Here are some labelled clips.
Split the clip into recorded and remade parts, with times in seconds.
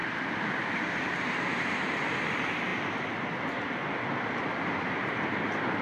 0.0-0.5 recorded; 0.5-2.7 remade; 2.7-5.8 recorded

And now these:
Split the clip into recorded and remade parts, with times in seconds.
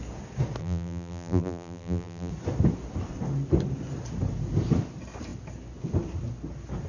0.0-0.6 recorded; 0.6-2.3 remade; 2.3-6.9 recorded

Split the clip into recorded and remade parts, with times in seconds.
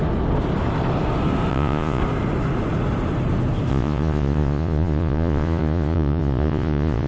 0.0-1.5 recorded; 1.5-2.0 remade; 2.0-3.7 recorded; 3.7-7.1 remade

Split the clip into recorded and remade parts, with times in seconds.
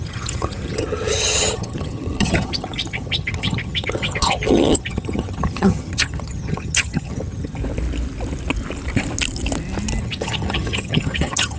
0.0-7.6 remade; 7.6-10.0 recorded; 10.0-11.6 remade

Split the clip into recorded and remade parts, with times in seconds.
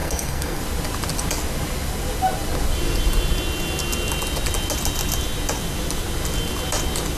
0.0-0.6 remade; 0.6-7.2 recorded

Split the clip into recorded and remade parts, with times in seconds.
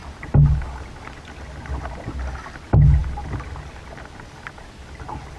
0.0-5.4 recorded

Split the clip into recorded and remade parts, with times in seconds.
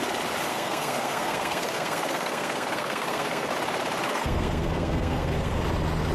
0.0-0.5 recorded; 0.5-3.5 remade; 3.5-4.1 recorded; 4.1-5.6 remade; 5.6-6.1 recorded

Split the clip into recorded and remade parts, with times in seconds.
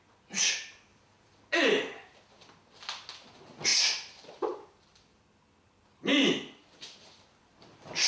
0.0-0.9 recorded; 0.9-1.6 remade; 1.6-8.1 recorded